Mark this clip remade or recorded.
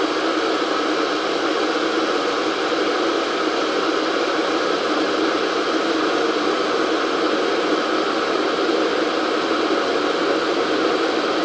recorded